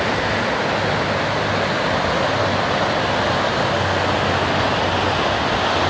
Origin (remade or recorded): recorded